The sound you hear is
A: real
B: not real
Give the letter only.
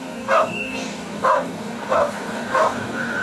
B